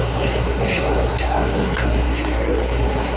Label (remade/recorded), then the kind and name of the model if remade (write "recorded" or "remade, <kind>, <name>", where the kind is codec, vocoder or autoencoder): remade, codec, SNAC